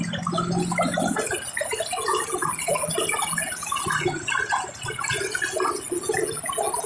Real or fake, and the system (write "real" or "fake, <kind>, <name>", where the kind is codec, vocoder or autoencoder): real